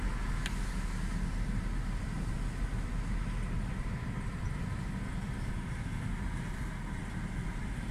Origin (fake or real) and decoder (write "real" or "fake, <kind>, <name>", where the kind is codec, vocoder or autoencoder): real